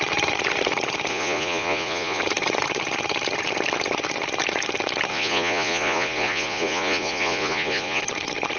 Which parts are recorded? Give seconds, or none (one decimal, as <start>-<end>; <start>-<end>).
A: 0.0-1.1; 2.2-5.1; 8.0-8.6